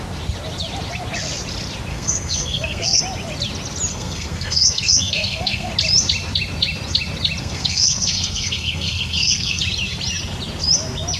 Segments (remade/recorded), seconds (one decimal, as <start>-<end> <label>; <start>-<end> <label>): 0.0-1.9 recorded; 1.9-3.0 remade; 3.0-3.9 recorded; 3.9-5.7 remade; 5.7-7.4 recorded; 7.4-9.6 remade; 9.6-11.2 recorded